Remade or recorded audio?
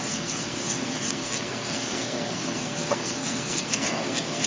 remade